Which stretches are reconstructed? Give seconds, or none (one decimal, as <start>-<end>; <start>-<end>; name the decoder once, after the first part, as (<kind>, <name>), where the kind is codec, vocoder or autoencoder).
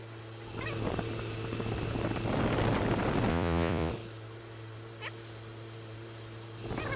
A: 3.3-3.9 (vocoder, Vocos)